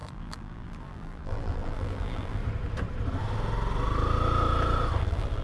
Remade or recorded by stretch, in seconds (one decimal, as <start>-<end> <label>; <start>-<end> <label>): 0.0-2.4 remade; 2.4-5.0 recorded; 5.0-5.4 remade